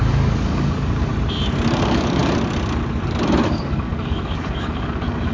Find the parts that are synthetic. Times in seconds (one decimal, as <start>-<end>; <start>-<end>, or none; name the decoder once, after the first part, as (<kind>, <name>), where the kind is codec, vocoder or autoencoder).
0.0-1.1 (codec, DAC); 1.8-2.2; 3.5-5.3